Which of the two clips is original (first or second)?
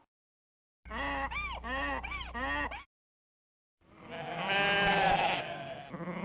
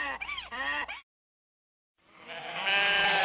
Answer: first